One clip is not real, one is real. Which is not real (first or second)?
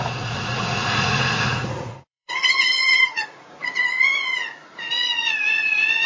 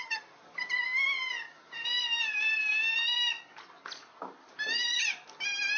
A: first